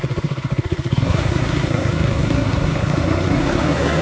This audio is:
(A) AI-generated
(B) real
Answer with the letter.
A